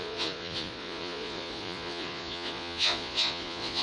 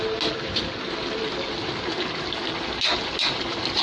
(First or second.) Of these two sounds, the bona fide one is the second